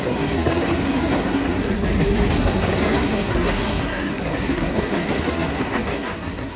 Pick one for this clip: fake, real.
fake